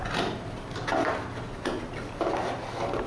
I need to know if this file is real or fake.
real